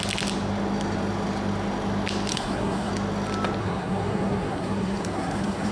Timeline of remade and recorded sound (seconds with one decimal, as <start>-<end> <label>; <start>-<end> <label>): 0.0-2.3 recorded; 2.3-2.9 remade; 2.9-3.6 recorded; 3.6-5.7 remade